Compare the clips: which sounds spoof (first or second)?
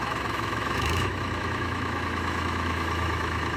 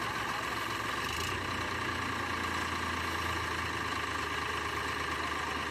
first